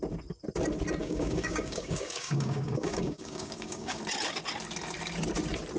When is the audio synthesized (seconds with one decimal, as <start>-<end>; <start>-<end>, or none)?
1.0-4.0